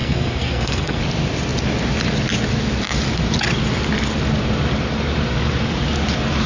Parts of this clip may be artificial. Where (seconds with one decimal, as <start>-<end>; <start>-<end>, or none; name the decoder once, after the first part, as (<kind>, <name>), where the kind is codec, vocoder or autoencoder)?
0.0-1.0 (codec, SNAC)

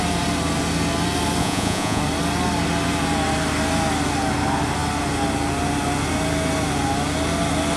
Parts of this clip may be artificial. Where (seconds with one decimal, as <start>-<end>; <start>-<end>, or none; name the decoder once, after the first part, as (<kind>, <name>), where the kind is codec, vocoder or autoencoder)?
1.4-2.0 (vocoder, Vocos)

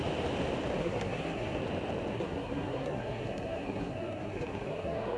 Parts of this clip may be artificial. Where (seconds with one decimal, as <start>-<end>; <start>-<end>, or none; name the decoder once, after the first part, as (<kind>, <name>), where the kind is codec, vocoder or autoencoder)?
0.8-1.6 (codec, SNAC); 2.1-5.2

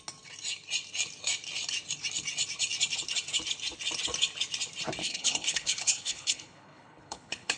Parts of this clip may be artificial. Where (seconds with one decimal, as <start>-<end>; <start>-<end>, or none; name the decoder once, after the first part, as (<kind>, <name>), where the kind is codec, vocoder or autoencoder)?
5.0-7.6 (codec, HILCodec)